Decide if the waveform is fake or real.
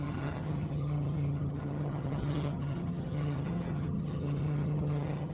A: fake